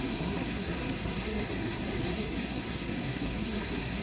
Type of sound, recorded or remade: remade